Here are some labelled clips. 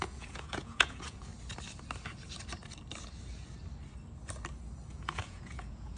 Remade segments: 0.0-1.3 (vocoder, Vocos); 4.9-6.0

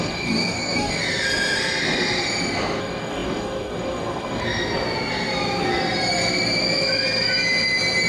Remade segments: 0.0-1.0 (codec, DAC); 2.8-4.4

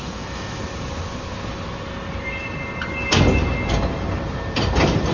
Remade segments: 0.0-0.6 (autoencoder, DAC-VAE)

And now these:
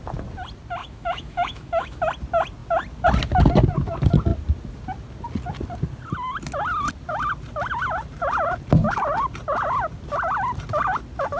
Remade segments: 0.8-2.0 (autoencoder, DAC-VAE)